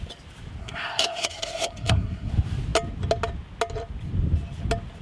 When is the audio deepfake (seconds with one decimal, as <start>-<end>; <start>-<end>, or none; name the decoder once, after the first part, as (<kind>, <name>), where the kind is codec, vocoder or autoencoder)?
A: 0.6-2.3 (codec, SNAC)